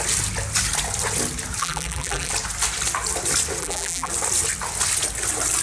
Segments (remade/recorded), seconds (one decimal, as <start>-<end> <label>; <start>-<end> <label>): 0.0-1.6 recorded; 1.6-2.3 remade; 2.3-3.6 recorded; 3.6-4.1 remade; 4.1-5.6 recorded